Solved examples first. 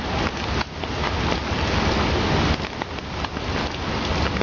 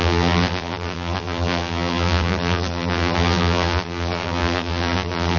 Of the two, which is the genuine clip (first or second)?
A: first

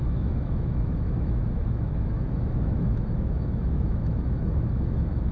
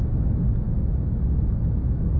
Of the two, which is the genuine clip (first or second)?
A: second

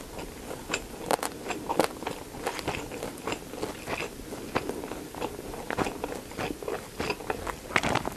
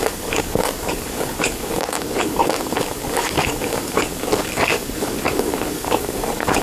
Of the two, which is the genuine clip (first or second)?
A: first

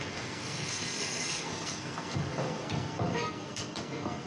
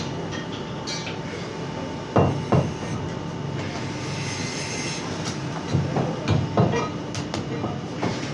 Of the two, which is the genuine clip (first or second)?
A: second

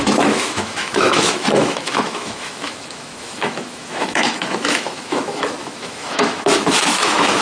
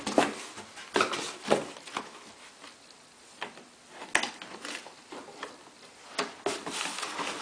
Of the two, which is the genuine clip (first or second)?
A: second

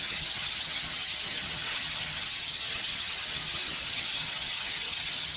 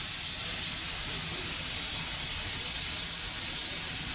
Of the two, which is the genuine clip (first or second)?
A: second